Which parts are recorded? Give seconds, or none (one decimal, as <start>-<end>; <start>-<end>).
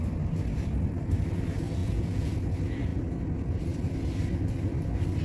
0.0-1.8; 2.3-5.2